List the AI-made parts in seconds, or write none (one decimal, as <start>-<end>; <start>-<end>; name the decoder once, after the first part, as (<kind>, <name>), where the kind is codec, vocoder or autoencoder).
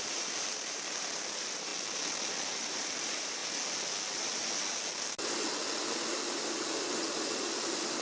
0.0-1.7 (vocoder, BigVGAN v2); 2.6-3.4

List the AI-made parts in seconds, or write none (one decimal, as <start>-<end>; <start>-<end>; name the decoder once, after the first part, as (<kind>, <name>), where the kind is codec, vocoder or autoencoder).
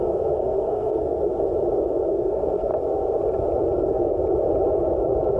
0.0-1.3 (codec, SNAC); 2.1-2.7; 3.8-4.2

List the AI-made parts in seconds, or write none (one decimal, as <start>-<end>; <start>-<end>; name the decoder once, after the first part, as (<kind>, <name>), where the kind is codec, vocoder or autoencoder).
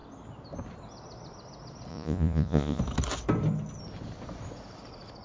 1.9-2.8 (vocoder, Vocos)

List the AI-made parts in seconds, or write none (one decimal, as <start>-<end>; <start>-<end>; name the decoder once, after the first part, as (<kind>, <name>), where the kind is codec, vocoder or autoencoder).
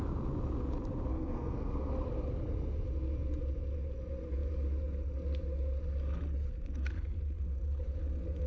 1.1-1.9 (codec, SNAC)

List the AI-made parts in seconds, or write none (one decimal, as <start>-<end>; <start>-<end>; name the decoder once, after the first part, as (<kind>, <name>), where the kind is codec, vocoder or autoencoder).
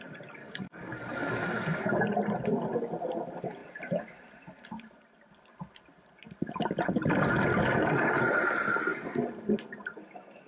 0.4-2.0 (codec, DAC); 7.5-8.2